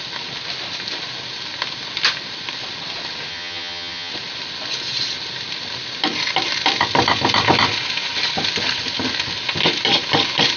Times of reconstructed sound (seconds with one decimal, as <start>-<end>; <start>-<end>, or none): 3.3-4.1